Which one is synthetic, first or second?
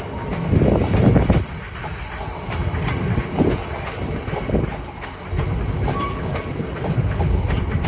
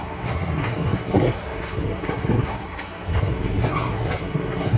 second